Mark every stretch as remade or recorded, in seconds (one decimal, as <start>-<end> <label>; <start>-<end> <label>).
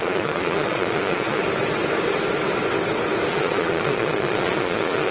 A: 0.0-1.4 remade; 1.4-3.3 recorded; 3.3-5.1 remade